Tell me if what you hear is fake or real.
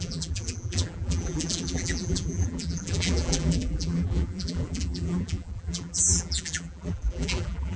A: fake